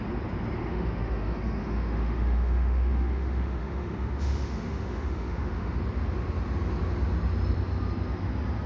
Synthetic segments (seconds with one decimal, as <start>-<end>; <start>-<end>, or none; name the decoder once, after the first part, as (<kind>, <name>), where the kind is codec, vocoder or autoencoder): 0.6-5.8 (autoencoder, DAC-VAE)